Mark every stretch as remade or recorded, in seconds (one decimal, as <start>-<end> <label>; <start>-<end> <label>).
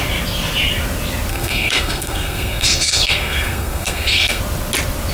0.0-1.3 recorded; 1.3-4.4 remade; 4.4-5.1 recorded